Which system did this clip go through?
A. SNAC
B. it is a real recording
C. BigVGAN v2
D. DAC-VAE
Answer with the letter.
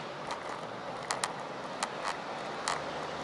B